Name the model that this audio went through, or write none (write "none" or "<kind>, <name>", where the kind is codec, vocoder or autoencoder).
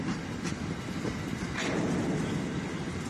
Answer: none